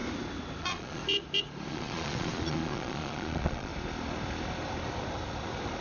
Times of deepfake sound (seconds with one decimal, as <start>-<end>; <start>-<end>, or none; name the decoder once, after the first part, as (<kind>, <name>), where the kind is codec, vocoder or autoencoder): 0.6-1.0 (vocoder, Vocos); 1.7-3.7